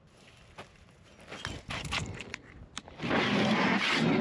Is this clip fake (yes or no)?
no